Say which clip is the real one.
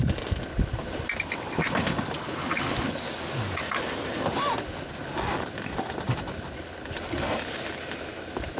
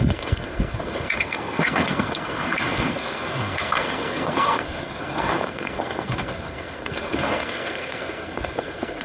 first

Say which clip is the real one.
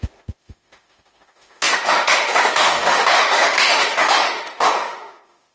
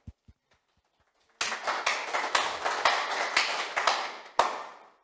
second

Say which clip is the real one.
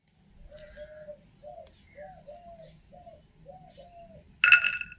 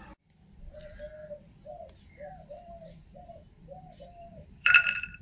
first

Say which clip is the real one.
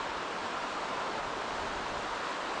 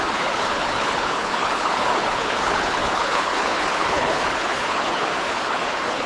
first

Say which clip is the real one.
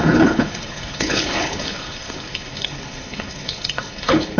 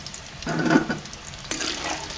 second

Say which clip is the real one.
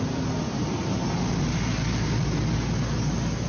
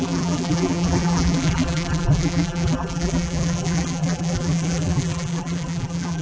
first